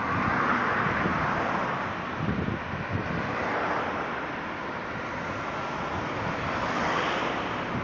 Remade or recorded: recorded